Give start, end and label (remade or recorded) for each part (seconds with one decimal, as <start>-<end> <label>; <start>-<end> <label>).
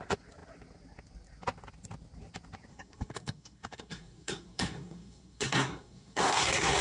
0.0-2.7 recorded; 2.7-6.8 remade